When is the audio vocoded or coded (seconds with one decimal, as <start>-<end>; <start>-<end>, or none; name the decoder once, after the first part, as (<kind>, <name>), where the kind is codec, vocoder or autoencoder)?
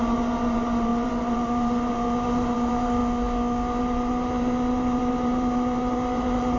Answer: 0.0-3.0 (vocoder, BigVGAN v2); 3.8-6.6